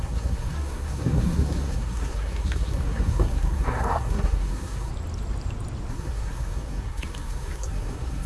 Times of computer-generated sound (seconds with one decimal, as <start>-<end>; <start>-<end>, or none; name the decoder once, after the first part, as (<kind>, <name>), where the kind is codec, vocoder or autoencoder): 0.0-4.9 (codec, SNAC); 5.9-8.3